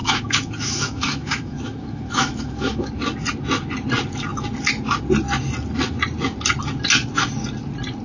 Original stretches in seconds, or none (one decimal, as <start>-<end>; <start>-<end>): 2.9-8.0